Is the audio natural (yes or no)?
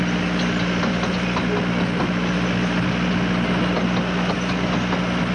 yes